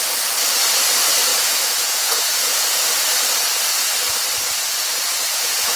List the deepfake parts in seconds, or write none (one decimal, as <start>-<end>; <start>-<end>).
1.3-2.8; 4.9-5.8